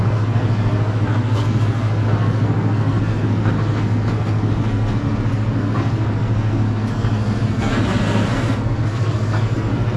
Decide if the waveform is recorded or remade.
remade